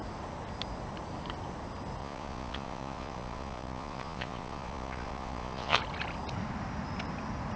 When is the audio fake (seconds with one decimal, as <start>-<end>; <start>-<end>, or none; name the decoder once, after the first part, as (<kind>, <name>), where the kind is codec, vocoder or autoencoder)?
2.0-5.8 (vocoder, Vocos)